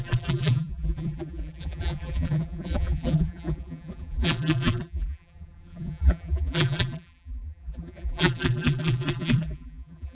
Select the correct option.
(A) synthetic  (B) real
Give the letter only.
A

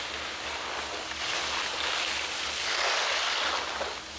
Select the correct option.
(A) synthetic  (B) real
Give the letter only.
B